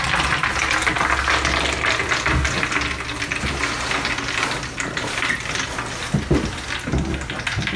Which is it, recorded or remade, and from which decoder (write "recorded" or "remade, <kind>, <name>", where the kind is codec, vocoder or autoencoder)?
recorded